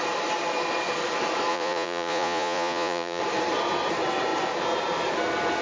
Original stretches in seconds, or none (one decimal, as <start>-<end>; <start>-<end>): 0.0-1.5; 3.2-5.6

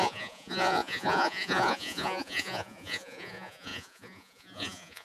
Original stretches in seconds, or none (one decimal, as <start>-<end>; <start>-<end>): none

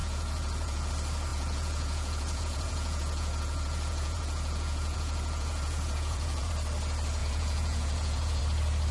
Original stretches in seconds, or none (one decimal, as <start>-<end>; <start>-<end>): 0.9-1.3; 6.5-7.2; 8.4-8.9

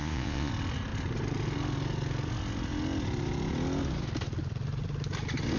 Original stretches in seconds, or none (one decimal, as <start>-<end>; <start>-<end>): 0.5-5.6

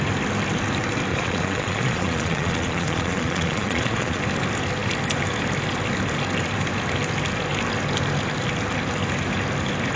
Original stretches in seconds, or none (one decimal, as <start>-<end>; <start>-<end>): 0.0-1.1; 4.2-10.0

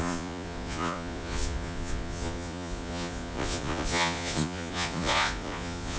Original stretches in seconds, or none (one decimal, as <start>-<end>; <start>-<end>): none